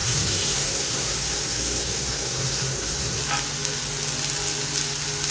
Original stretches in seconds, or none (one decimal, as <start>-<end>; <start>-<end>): 3.2-5.3